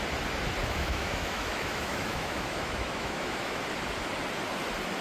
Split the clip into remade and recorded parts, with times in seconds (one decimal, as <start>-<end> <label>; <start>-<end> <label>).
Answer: 0.0-0.6 recorded; 0.6-3.6 remade; 3.6-5.0 recorded